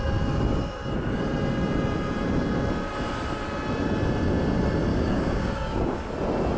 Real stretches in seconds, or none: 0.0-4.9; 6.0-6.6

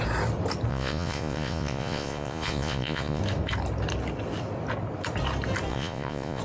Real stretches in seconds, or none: 0.0-0.7; 3.2-5.7

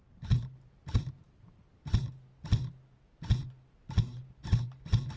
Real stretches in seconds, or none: 0.0-5.2

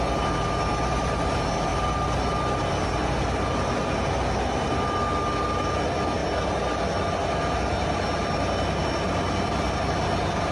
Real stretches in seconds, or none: 0.0-10.5

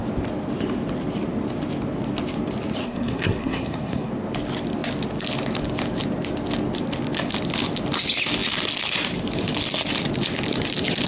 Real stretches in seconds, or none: 0.0-2.8; 4.1-11.1

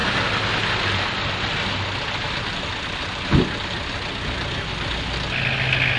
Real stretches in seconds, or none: 0.0-6.0